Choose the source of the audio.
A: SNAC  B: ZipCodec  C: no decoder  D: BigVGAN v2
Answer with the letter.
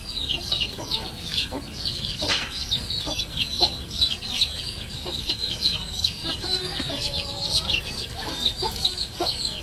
A